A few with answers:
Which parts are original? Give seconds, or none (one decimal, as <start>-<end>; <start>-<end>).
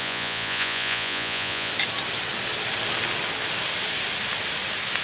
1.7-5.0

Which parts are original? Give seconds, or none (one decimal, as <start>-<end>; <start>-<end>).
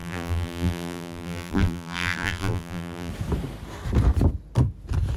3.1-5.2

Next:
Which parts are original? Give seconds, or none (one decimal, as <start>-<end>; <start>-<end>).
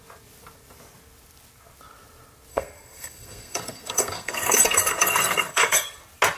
0.0-2.5; 6.0-6.4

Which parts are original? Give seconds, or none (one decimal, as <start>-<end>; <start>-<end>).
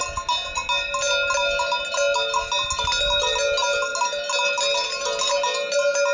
0.0-6.1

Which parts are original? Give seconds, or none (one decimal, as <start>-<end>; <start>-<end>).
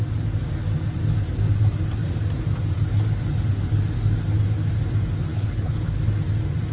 0.0-5.3; 6.0-6.7